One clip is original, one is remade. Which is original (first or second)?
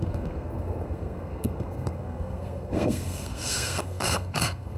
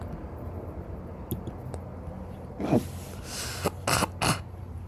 second